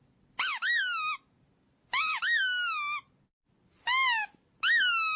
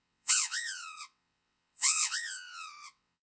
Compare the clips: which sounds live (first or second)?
first